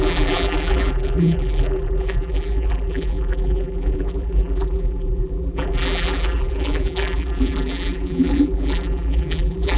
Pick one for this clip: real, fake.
fake